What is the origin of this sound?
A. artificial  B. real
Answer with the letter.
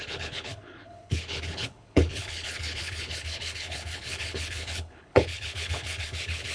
A